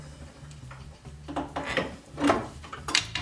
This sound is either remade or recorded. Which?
remade